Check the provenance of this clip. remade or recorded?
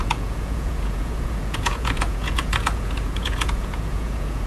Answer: remade